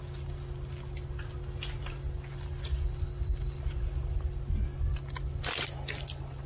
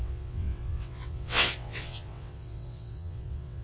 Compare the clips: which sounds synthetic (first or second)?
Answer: second